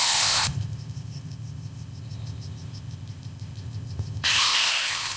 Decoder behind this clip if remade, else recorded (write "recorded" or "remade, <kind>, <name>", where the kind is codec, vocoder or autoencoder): remade, codec, ZipCodec